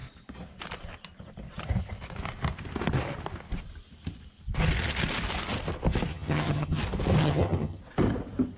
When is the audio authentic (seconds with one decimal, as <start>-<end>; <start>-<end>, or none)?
0.0-6.1; 6.8-7.2; 7.8-8.6